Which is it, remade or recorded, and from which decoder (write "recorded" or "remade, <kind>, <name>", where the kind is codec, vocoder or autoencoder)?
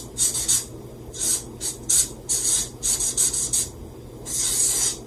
recorded